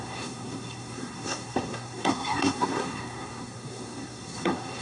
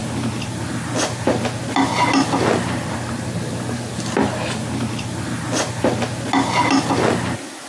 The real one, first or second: second